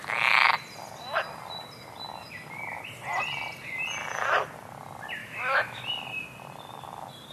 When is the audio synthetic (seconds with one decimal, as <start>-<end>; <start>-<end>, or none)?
5.2-5.8